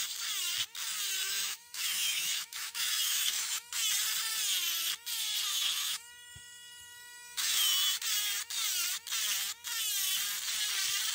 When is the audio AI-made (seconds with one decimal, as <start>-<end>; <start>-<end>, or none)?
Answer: 1.2-3.7; 5.5-8.0